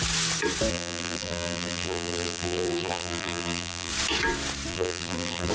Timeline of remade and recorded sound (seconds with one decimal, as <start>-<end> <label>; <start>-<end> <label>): 0.0-0.7 recorded; 0.7-3.9 remade; 3.9-4.7 recorded; 4.7-5.5 remade